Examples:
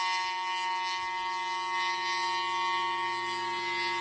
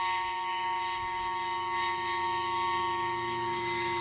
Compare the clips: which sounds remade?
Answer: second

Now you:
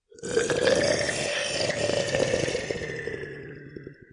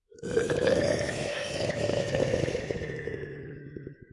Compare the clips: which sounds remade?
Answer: second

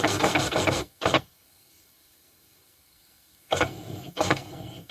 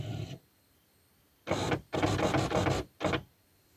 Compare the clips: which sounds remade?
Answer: first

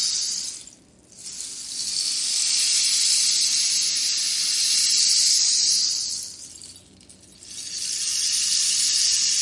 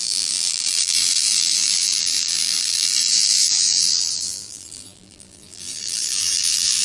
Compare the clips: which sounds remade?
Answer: second